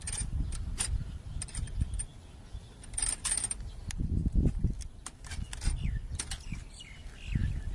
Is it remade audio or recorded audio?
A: recorded